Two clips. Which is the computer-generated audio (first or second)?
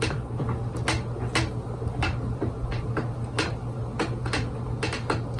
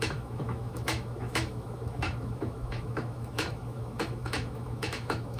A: second